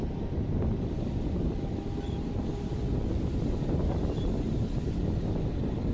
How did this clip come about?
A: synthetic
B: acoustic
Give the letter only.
B